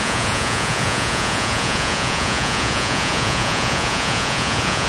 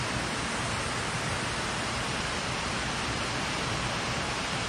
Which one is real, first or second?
second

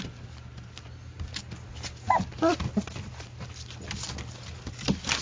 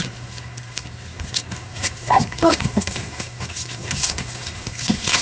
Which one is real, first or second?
first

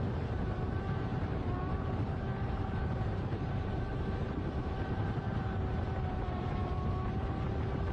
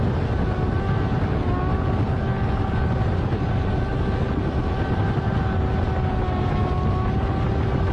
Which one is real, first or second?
second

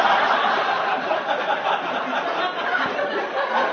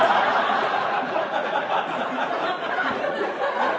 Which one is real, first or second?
first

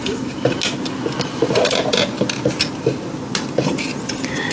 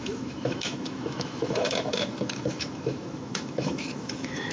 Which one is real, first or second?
first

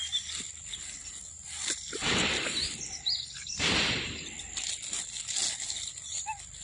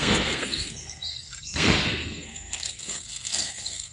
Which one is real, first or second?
first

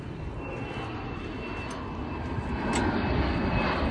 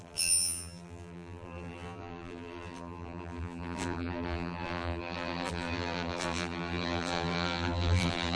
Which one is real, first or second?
first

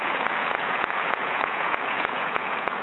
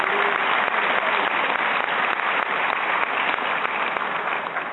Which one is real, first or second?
second